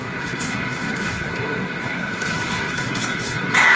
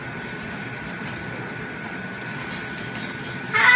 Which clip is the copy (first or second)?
first